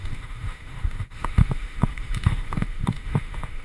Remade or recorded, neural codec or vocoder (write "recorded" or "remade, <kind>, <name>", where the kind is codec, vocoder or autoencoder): remade, autoencoder, DAC-VAE